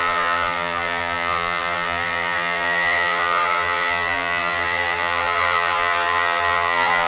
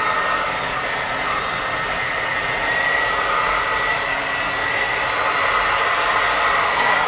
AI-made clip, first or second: first